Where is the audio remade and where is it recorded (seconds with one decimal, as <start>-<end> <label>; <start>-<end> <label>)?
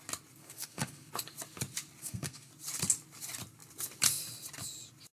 0.0-0.4 recorded; 0.4-1.1 remade; 1.1-2.0 recorded; 2.0-2.5 remade; 2.5-5.2 recorded